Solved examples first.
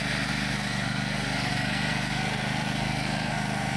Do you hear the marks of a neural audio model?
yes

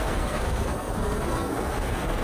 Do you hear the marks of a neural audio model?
yes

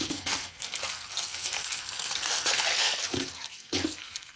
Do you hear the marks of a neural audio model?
yes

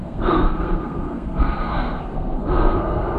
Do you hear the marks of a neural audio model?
yes